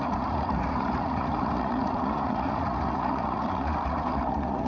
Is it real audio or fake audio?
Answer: fake